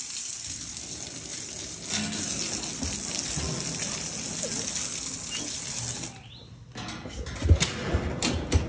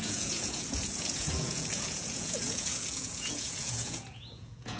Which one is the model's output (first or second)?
second